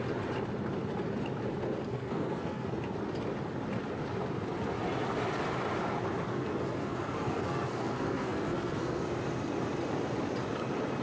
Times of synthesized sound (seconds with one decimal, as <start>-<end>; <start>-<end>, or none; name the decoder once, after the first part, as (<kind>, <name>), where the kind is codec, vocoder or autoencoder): 1.9-2.7 (codec, SNAC); 6.3-9.0

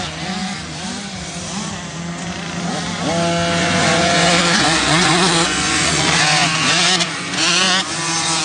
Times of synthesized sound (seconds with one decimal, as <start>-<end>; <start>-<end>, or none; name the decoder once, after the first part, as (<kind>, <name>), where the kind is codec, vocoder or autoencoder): 3.6-8.4 (vocoder, Vocos)

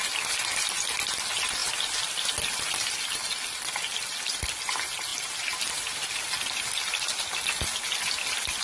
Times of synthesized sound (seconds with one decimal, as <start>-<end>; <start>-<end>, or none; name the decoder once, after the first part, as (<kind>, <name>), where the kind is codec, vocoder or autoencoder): none